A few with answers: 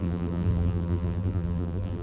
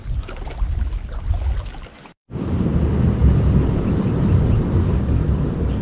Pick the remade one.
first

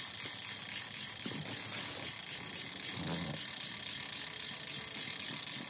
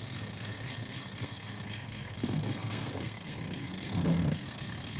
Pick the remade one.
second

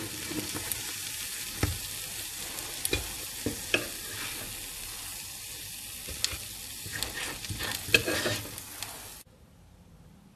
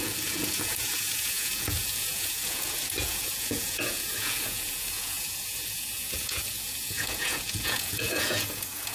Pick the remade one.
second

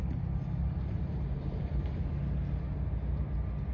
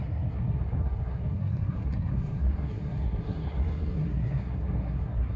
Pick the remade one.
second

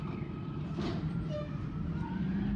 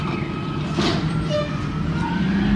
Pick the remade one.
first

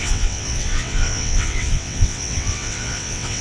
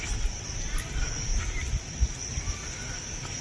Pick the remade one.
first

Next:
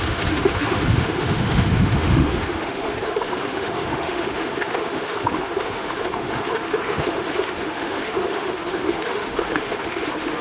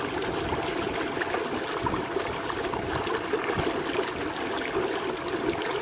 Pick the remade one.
first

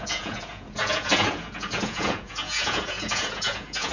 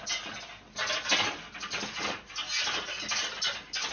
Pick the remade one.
first